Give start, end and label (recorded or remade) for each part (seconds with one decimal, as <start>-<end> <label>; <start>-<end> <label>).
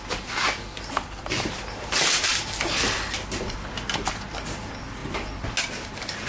0.0-6.3 recorded